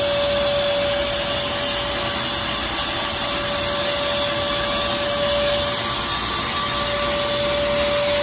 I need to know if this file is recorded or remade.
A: recorded